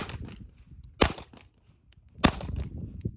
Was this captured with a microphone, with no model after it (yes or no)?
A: yes